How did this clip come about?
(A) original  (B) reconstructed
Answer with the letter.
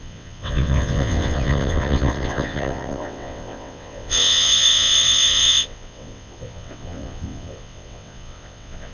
B